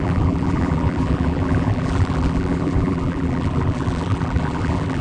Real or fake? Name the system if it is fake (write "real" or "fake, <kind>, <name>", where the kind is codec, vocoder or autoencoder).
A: fake, vocoder, BigVGAN v2